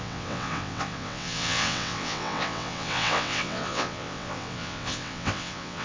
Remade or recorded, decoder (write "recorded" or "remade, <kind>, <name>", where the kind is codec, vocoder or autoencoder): remade, vocoder, WaveNeXt